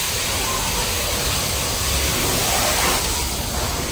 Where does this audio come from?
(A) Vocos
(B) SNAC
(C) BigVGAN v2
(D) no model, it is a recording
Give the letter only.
D